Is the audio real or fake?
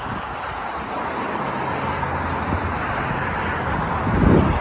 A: real